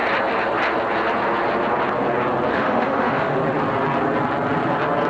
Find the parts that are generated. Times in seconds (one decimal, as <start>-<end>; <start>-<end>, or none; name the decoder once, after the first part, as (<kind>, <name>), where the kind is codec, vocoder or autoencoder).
2.5-3.4 (autoencoder, DAC-VAE)